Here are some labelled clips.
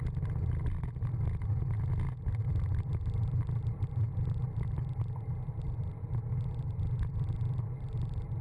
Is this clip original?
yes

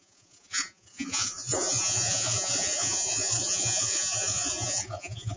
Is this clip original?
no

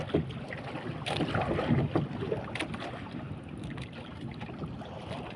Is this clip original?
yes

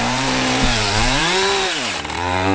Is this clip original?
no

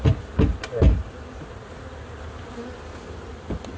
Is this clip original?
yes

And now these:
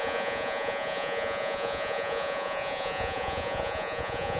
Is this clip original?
no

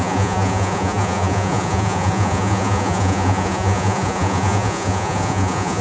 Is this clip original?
no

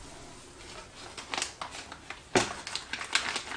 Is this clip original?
yes